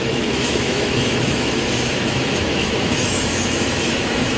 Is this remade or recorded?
remade